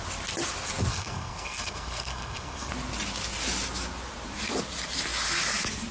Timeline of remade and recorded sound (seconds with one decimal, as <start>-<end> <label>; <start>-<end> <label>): 0.0-0.9 recorded; 0.9-2.7 remade; 2.7-5.9 recorded